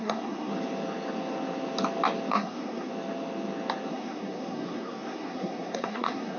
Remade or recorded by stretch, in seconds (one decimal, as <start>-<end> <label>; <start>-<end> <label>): 0.0-0.5 remade; 0.5-2.3 recorded; 2.3-2.9 remade; 2.9-3.9 recorded; 3.9-6.4 remade